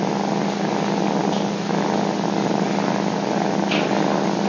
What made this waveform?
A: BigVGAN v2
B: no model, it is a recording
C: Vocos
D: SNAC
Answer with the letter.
B